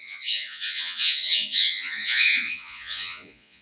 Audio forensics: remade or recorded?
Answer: remade